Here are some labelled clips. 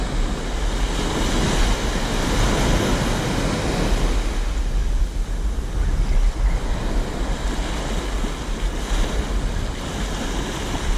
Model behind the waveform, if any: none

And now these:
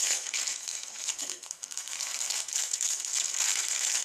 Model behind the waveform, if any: codec, SNAC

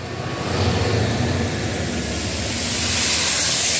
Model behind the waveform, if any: none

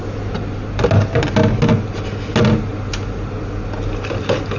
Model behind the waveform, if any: none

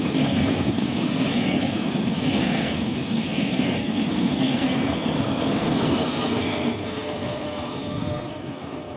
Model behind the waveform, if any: codec, SNAC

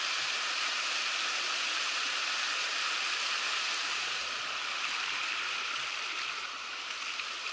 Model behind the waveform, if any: none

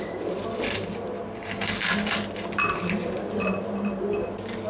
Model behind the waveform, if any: none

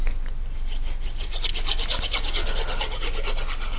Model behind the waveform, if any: none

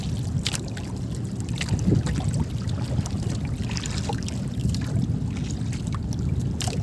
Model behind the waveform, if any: none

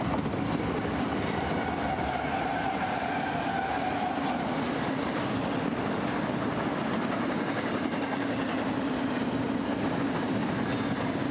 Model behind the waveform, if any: none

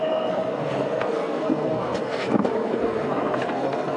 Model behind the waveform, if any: codec, SNAC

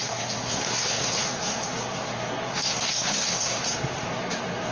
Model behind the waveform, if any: codec, SNAC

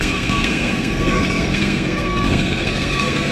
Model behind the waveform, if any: codec, SNAC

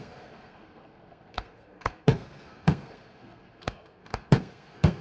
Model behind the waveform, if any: codec, SNAC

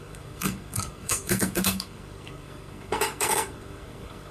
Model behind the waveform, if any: codec, SNAC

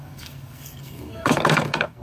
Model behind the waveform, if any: codec, SNAC